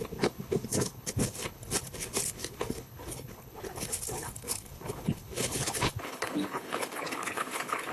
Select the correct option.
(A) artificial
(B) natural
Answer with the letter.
A